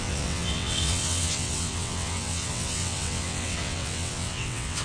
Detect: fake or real fake